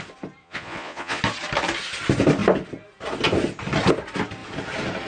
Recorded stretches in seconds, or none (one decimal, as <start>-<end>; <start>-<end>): 0.0-0.4; 1.2-5.1